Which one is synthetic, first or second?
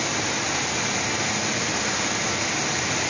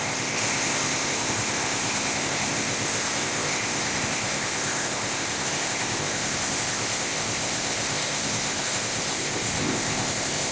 second